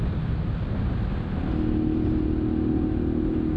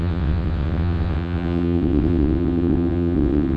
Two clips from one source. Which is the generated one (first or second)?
second